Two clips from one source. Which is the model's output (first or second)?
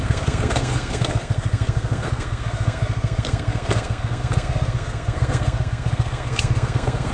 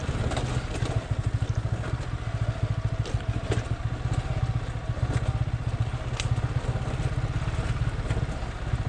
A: first